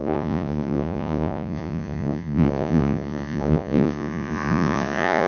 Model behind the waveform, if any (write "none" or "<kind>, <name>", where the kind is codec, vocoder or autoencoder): vocoder, Vocos